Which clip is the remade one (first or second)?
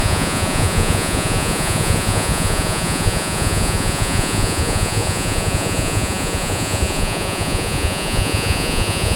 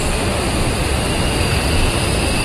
first